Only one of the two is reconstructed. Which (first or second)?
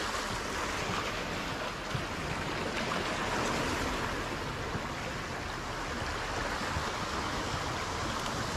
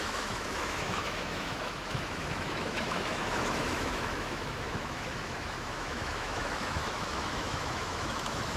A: second